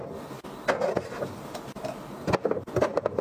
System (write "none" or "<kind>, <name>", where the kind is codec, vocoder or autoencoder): none